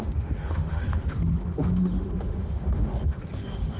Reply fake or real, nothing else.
fake